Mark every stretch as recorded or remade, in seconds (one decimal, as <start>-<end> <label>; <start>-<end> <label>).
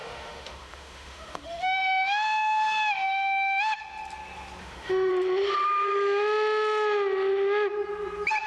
0.0-3.8 remade; 3.8-4.6 recorded; 4.6-5.1 remade; 5.1-8.5 recorded